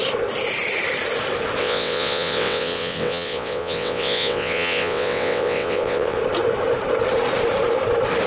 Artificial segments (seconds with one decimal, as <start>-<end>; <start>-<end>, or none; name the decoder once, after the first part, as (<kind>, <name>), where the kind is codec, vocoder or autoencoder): 1.6-6.2 (vocoder, WaveNeXt)